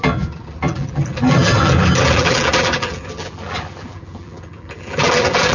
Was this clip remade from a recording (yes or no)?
yes